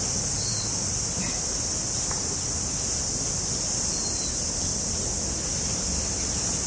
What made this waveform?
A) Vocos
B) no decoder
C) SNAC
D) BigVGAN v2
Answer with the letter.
B